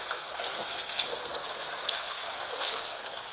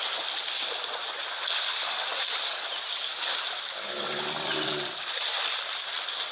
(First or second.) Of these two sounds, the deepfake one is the first